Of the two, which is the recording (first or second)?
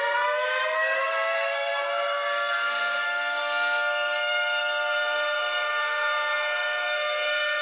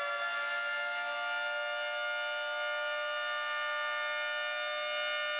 second